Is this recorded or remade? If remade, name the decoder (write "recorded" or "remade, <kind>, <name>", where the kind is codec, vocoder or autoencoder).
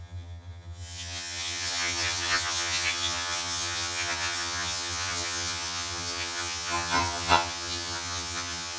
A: remade, vocoder, HiFi-GAN